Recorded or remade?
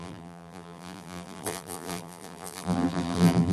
remade